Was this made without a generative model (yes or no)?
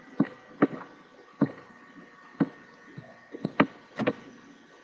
yes